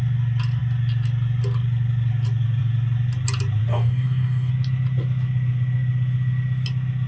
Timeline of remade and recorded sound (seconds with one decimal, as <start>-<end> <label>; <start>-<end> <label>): 0.0-3.7 recorded; 3.7-4.5 remade; 4.5-7.1 recorded